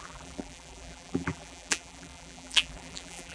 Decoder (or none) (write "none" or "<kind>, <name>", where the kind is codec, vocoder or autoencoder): vocoder, BigVGAN v2